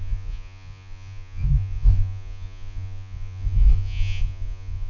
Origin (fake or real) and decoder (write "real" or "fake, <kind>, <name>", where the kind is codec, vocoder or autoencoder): fake, vocoder, Vocos